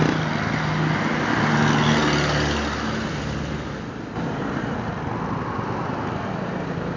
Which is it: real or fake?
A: real